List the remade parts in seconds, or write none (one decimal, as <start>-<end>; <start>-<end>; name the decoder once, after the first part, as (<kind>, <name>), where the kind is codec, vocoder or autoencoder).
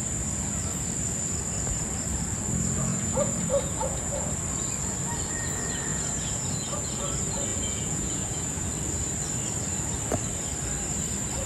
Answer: 2.9-4.3 (vocoder, Vocos); 5.9-7.0; 7.5-8.7